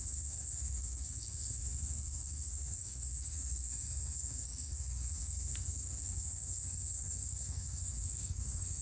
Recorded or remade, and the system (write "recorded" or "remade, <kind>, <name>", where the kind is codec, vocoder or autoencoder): remade, codec, SNAC